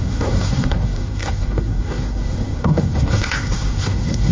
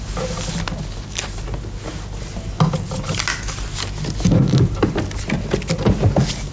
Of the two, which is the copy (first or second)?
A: first